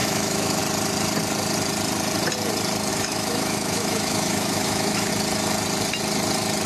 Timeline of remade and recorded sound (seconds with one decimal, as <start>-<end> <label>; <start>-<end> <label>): 0.0-0.6 remade; 0.6-2.9 recorded; 2.9-5.1 remade; 5.1-6.7 recorded